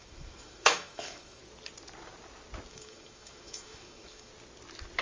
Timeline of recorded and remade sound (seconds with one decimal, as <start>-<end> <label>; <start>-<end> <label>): 0.0-1.4 remade; 1.4-2.7 recorded; 2.7-4.3 remade; 4.3-5.0 recorded